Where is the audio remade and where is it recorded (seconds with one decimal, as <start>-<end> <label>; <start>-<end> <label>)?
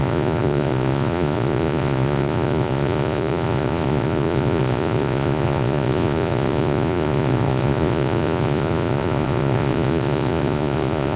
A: 0.0-11.2 remade